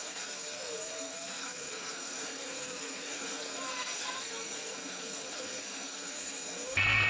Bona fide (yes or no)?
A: no